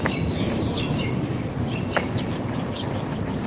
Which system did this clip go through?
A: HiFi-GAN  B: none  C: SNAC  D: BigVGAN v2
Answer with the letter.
D